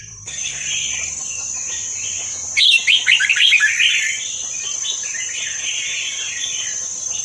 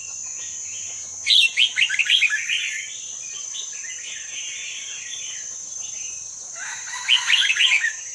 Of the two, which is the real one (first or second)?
second